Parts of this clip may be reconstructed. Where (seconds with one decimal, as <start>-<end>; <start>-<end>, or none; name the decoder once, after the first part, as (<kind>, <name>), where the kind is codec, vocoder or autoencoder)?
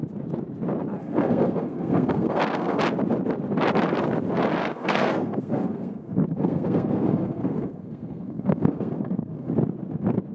1.0-2.8 (codec, SNAC); 4.6-9.5